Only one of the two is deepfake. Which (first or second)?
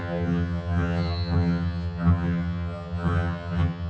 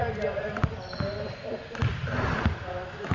first